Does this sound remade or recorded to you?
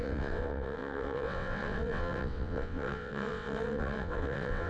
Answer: remade